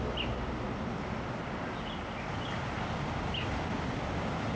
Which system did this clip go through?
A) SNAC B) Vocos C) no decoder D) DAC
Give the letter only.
C